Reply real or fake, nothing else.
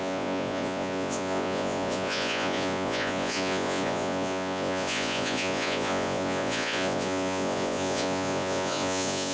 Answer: fake